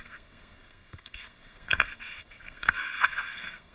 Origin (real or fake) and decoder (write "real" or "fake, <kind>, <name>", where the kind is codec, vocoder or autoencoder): fake, codec, SNAC